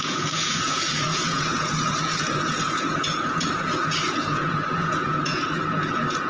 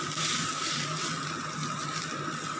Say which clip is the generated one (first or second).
first